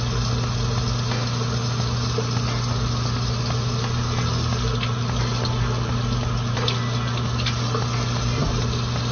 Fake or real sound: real